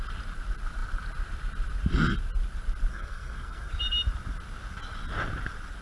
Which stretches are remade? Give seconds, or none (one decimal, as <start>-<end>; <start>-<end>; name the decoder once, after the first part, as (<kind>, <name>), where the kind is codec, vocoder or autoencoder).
2.9-3.7 (codec, SNAC)